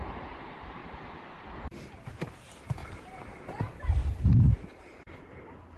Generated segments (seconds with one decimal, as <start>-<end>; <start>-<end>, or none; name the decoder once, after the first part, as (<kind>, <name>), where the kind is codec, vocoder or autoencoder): 0.0-0.8 (vocoder, BigVGAN v2); 1.4-4.0